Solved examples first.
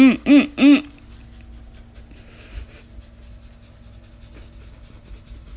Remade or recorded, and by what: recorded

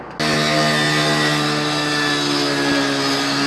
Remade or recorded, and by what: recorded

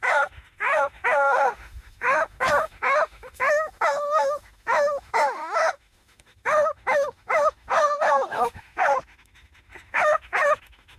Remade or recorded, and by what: remade, autoencoder, DAC-VAE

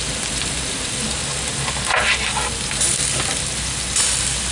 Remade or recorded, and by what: recorded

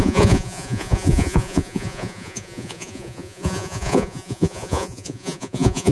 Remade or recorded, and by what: remade, vocoder, Vocos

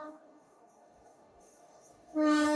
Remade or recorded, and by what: remade, codec, DAC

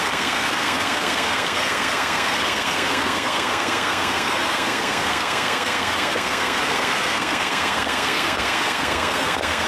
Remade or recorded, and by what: remade, codec, SNAC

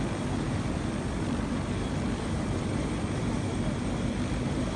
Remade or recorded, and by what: remade, vocoder, BigVGAN v2